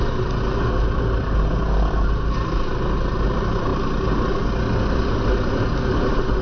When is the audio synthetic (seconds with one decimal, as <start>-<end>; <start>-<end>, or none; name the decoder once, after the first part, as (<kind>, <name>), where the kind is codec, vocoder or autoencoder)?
none